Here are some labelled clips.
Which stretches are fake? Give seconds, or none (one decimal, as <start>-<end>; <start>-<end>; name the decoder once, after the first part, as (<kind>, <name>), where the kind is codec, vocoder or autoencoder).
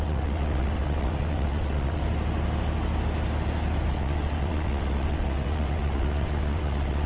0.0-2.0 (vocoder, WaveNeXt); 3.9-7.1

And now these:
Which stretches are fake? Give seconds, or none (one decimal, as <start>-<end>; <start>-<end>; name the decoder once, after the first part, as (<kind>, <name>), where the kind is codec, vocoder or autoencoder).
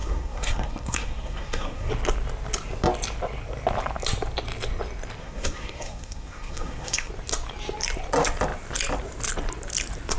0.0-1.9 (codec, SNAC); 5.2-7.1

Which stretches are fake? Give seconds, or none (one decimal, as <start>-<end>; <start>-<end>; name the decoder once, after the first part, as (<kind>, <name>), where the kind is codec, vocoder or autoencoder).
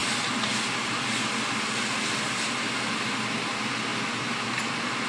none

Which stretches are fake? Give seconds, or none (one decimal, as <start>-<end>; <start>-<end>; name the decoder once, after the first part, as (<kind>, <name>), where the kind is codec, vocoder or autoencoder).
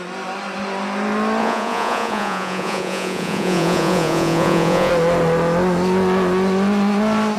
1.4-4.9 (vocoder, Vocos)